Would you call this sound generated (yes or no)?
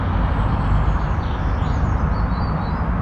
no